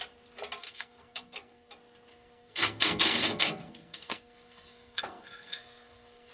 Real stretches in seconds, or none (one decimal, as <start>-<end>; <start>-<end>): 0.0-0.6; 1.7-2.1